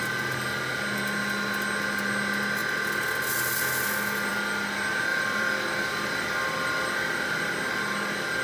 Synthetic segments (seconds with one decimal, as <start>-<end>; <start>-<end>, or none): 5.1-6.4